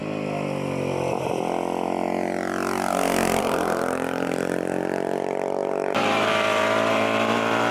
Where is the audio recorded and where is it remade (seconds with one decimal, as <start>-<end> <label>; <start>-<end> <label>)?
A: 0.0-3.4 recorded; 3.4-7.7 remade